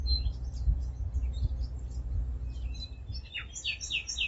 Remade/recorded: recorded